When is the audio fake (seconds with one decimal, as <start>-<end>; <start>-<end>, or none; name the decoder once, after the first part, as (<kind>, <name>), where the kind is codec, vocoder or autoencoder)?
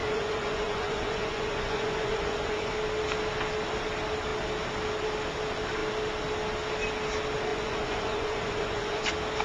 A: 0.0-2.7 (vocoder, Vocos); 7.5-9.0